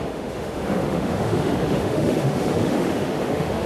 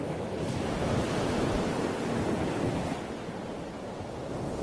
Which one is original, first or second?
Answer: second